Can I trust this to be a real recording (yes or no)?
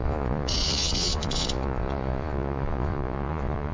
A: no